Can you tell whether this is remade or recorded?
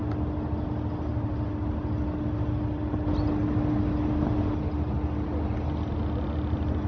recorded